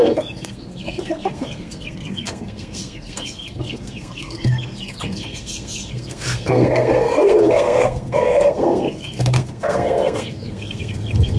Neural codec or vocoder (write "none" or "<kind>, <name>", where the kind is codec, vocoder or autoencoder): codec, SNAC